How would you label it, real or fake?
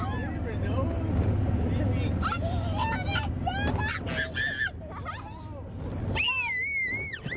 real